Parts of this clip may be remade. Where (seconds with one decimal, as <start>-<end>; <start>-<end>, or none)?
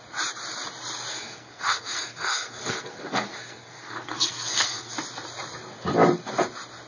1.1-4.9